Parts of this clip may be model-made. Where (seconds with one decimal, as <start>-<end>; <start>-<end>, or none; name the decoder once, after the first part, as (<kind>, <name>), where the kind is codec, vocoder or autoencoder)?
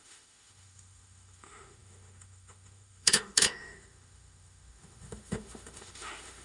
0.0-6.4 (autoencoder, DAC-VAE)